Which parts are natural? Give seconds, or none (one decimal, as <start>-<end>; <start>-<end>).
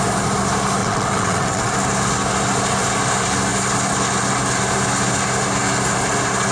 0.0-0.8; 1.7-6.5